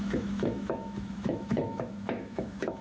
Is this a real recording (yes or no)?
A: no